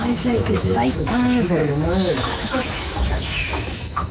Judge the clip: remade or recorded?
remade